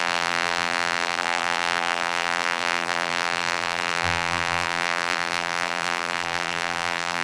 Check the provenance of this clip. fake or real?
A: fake